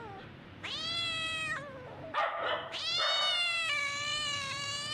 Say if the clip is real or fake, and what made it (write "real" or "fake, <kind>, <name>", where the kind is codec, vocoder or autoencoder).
fake, vocoder, BigVGAN v2